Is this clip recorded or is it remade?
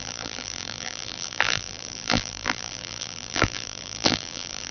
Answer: remade